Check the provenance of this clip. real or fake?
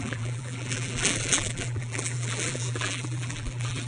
fake